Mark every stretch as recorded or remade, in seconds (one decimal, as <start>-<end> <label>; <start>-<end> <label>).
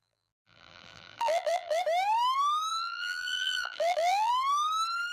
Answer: 0.0-1.8 remade; 1.8-2.7 recorded; 2.7-4.3 remade; 4.3-5.1 recorded